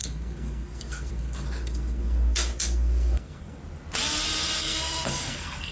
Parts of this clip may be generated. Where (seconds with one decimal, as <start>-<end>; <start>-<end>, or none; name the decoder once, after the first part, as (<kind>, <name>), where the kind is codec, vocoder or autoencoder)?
0.0-3.6 (codec, SNAC); 4.6-5.7